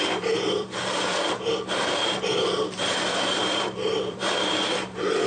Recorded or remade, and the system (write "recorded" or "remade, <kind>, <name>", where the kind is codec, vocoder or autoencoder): remade, vocoder, BigVGAN v2